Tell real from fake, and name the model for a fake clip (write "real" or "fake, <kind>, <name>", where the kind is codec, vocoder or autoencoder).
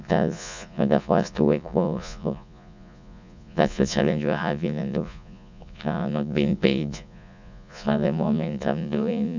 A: fake, vocoder, Vocos